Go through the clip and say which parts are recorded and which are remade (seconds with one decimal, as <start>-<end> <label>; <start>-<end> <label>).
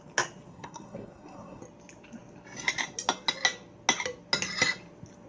0.0-0.5 recorded; 0.5-1.6 remade; 1.6-5.3 recorded